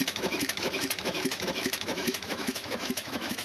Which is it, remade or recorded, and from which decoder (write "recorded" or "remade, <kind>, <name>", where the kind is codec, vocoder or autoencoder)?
remade, autoencoder, DAC-VAE